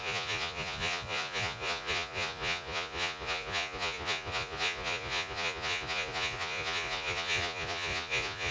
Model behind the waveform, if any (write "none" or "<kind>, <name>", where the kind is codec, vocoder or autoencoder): vocoder, Vocos